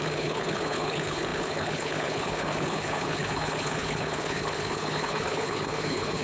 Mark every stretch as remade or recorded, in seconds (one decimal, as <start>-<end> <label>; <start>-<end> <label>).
0.0-6.2 remade

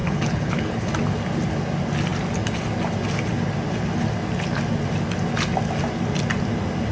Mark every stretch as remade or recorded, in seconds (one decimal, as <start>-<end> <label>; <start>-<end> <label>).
0.0-0.9 remade; 0.9-6.9 recorded